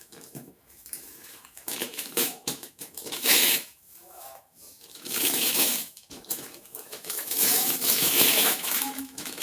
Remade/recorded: remade